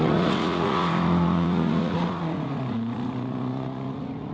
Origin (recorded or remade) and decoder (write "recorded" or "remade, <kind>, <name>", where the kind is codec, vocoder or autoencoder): remade, vocoder, Vocos